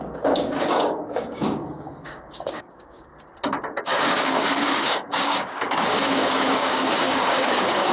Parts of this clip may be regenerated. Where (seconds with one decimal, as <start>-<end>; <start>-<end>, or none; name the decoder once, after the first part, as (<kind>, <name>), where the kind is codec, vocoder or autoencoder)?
0.0-3.1 (codec, DAC); 3.8-7.9